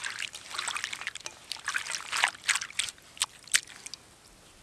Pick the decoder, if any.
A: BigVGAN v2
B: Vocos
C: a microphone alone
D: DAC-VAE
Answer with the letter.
C